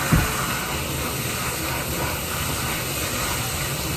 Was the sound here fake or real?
real